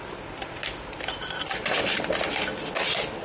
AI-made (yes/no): no